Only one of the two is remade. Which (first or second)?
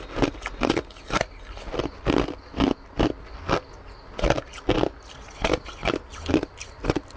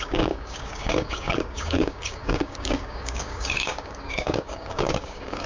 second